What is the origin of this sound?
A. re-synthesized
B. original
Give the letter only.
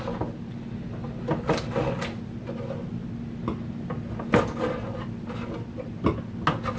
B